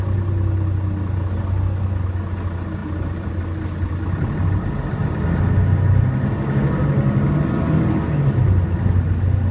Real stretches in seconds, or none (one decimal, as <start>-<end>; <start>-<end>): 0.0-2.8; 3.3-9.5